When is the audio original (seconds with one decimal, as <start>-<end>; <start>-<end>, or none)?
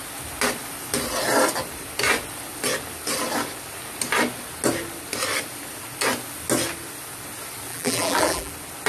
0.0-7.7; 8.5-8.9